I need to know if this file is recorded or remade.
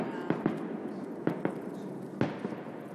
recorded